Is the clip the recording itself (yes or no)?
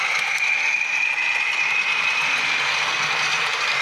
yes